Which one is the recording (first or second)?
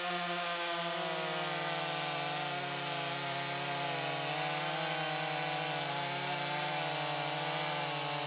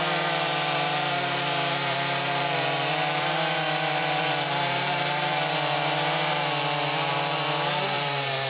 first